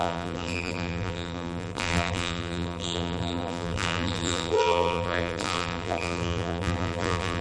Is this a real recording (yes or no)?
no